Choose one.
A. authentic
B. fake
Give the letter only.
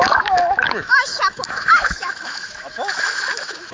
B